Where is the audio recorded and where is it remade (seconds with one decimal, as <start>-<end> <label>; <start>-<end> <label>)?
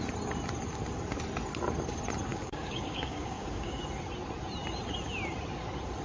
0.0-2.3 recorded; 2.3-3.8 remade; 3.8-6.0 recorded